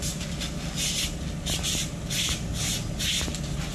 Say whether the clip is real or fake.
real